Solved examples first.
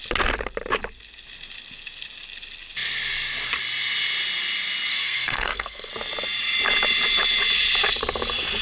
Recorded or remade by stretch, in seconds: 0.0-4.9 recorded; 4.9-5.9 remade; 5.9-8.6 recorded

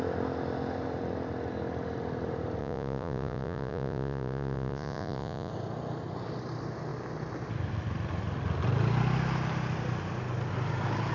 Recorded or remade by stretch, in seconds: 0.0-2.6 recorded; 2.6-5.5 remade; 5.5-11.1 recorded